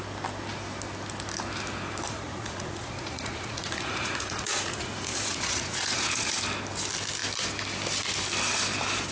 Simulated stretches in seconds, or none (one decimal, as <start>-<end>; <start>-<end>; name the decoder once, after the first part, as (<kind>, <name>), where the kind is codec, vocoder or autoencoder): 2.1-6.3 (vocoder, Vocos)